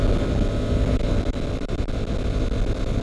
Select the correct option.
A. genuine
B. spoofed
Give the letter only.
A